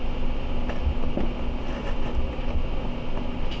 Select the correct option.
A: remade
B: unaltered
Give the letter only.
B